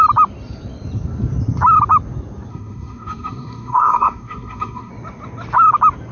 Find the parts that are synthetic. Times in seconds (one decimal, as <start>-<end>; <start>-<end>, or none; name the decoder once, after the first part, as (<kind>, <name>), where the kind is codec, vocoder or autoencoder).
2.5-4.9 (codec, SNAC)